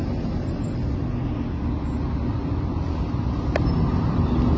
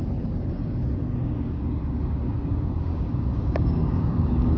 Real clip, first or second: first